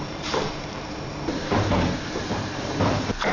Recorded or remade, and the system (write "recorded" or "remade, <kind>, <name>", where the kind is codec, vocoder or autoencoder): remade, vocoder, BigVGAN v2